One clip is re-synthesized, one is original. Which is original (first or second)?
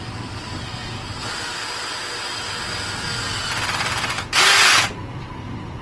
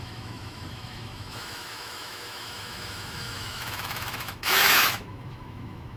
first